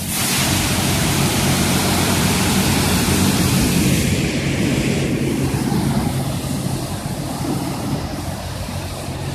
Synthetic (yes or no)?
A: yes